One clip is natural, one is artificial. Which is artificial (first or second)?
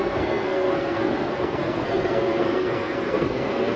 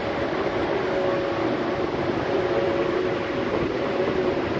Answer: first